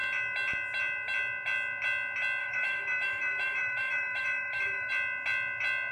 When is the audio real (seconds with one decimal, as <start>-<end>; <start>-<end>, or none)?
0.0-2.4; 4.9-5.9